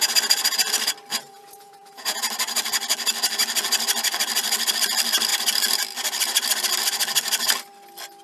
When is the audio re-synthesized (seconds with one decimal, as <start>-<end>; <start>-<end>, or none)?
1.1-2.2